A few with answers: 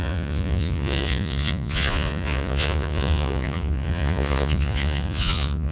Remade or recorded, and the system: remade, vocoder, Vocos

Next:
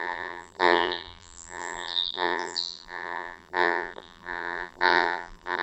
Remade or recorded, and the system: remade, vocoder, BigVGAN v2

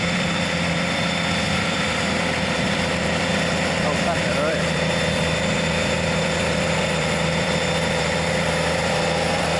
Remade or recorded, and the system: remade, vocoder, BigVGAN v2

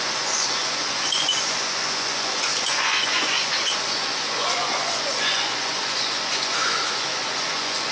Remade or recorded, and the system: remade, vocoder, Vocos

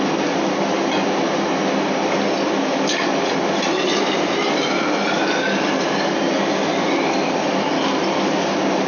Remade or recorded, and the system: recorded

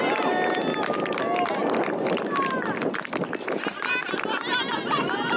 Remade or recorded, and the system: recorded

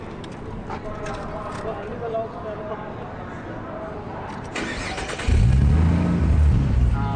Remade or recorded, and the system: recorded